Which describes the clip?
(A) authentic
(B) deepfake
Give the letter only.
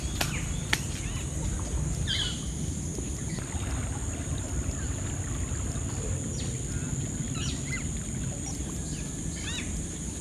A